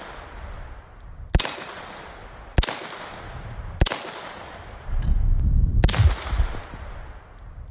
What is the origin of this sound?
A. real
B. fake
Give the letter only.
A